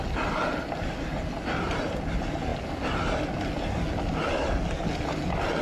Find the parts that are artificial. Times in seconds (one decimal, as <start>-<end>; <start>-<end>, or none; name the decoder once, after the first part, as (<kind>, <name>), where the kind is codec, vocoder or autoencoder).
none